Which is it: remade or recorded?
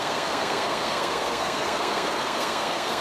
remade